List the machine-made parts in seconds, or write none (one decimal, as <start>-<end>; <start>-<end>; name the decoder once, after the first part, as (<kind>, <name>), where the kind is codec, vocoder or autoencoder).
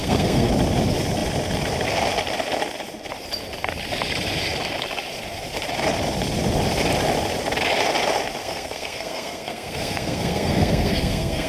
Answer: 0.0-0.5 (codec, SNAC); 8.4-11.5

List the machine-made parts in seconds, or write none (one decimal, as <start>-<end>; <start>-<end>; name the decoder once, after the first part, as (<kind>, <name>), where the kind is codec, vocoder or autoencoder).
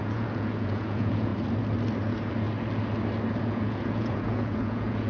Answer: 0.0-1.3 (vocoder, Vocos); 3.4-5.1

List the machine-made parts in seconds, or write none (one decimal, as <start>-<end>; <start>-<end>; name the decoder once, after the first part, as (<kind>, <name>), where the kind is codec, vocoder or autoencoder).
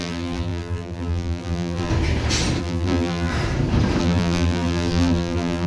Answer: 0.0-1.9 (vocoder, BigVGAN v2); 2.6-3.3; 4.0-5.7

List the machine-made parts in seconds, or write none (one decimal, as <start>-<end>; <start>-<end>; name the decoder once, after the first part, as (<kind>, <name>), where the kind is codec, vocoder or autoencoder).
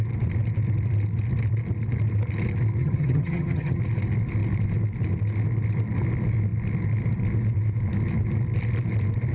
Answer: 2.8-3.8 (vocoder, HiFi-GAN)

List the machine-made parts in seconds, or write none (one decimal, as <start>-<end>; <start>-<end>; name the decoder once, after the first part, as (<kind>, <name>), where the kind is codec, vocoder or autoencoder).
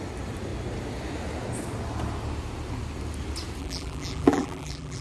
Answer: 3.6-5.0 (vocoder, BigVGAN v2)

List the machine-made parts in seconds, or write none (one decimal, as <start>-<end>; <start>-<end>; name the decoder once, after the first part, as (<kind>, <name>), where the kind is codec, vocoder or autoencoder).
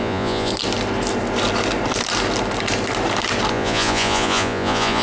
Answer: 0.0-0.5 (vocoder, Vocos); 3.5-5.0